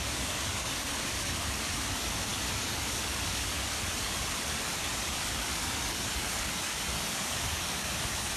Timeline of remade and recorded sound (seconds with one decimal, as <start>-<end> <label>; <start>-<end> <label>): 0.0-8.4 remade